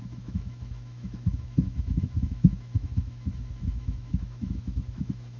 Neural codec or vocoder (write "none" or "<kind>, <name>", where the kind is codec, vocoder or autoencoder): autoencoder, DAC-VAE